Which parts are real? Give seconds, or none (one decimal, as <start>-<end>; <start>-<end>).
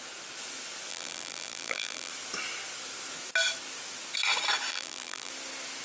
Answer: 0.0-0.9; 2.1-4.7; 5.3-5.8